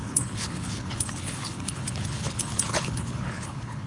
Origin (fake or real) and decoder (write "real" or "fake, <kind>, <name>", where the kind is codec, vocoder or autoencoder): fake, codec, HILCodec